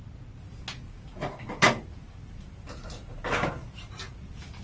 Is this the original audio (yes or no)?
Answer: yes